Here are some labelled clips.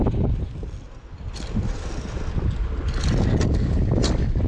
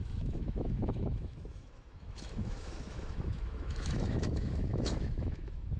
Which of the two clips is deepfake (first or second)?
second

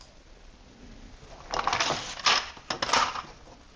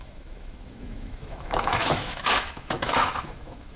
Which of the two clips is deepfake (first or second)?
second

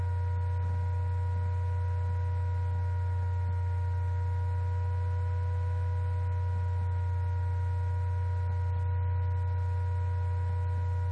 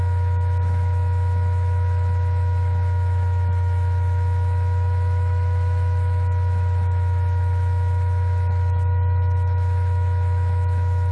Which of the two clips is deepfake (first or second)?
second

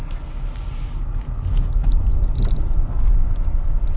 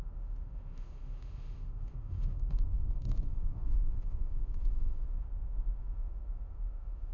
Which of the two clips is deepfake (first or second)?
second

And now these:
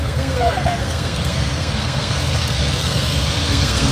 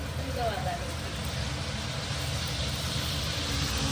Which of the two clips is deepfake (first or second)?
first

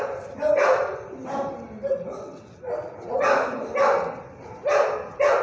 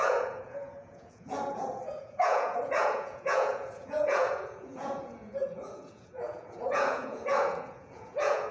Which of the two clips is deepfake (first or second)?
second